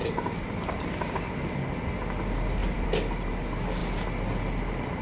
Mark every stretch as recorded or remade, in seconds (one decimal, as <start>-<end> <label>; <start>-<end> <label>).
0.0-1.2 remade; 1.2-2.6 recorded; 2.6-3.4 remade; 3.4-5.0 recorded